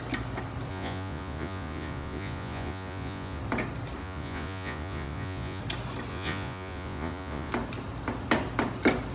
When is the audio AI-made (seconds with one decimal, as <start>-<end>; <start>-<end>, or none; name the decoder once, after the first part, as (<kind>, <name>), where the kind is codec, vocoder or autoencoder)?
0.7-3.4 (vocoder, Vocos); 4.0-5.6; 6.1-7.5